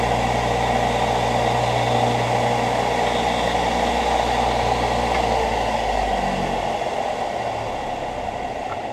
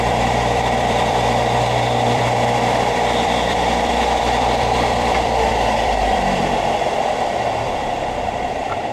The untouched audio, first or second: first